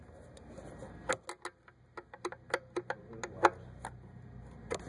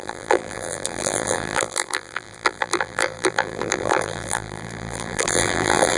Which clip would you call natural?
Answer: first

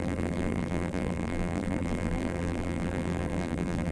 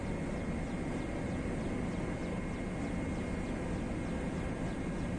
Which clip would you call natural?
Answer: second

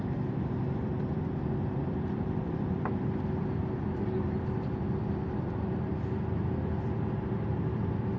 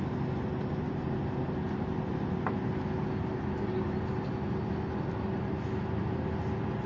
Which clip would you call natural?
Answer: second